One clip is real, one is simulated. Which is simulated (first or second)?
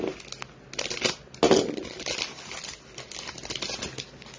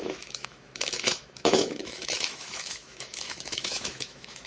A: second